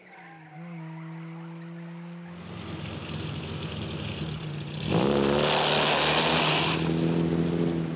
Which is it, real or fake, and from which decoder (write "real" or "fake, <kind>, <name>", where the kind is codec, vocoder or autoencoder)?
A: real